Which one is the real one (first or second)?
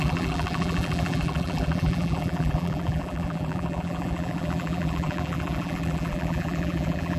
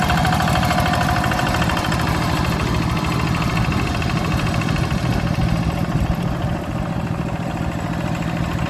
second